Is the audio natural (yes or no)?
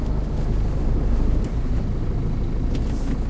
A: yes